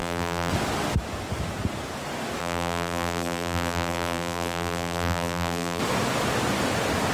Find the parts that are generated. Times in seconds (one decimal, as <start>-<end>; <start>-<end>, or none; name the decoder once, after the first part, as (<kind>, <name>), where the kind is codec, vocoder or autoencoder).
0.0-0.5 (vocoder, BigVGAN v2); 2.4-5.8